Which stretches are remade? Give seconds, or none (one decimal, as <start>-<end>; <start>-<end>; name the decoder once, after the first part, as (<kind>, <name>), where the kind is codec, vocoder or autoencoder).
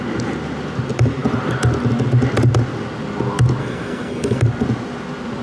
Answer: 3.6-4.4 (codec, SNAC)